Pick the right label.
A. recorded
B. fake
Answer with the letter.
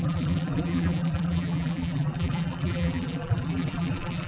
B